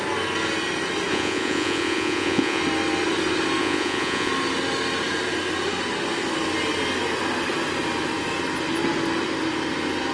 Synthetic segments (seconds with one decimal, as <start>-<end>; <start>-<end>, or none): 1.1-2.6; 3.6-4.3